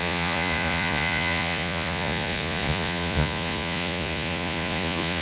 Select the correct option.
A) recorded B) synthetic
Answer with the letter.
B